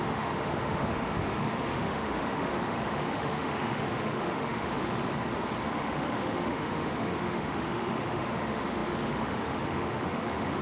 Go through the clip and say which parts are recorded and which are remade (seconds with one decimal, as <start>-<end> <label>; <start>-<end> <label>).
0.0-5.0 remade; 5.0-5.6 recorded; 5.6-10.6 remade